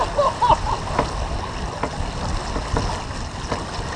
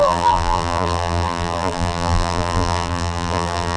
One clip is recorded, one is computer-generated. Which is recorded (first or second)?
first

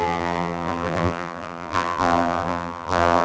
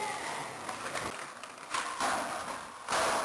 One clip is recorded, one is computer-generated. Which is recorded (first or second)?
second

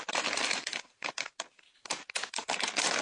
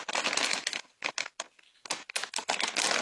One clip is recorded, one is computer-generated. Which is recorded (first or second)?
second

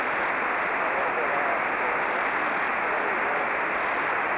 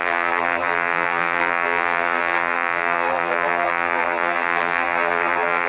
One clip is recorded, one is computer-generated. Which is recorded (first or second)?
first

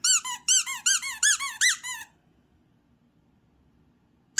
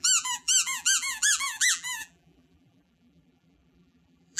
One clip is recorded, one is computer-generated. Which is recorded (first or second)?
first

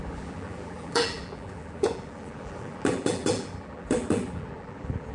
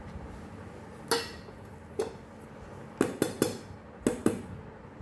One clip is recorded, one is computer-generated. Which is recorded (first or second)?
second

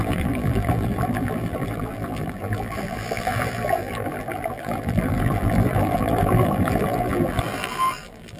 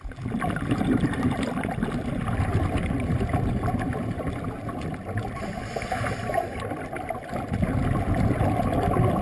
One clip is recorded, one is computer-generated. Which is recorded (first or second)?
second